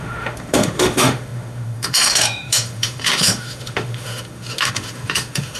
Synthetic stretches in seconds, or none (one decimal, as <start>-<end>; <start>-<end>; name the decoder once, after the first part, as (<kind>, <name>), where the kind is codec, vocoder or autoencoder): 0.0-5.6 (autoencoder, DAC-VAE)